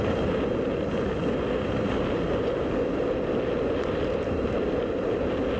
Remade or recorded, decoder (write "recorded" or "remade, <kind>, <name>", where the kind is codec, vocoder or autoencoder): recorded